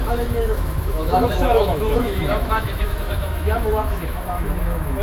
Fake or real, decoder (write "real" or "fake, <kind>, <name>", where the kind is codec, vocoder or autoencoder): fake, autoencoder, DAC-VAE